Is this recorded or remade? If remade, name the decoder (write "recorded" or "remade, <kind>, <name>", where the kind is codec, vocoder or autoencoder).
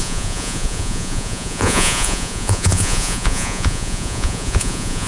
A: remade, vocoder, Vocos